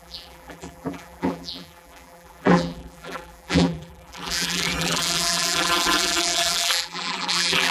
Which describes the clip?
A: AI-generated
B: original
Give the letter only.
A